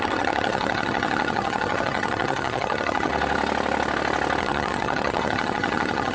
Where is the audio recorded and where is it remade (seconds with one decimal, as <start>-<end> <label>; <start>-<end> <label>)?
0.0-3.1 remade; 3.1-4.4 recorded; 4.4-6.1 remade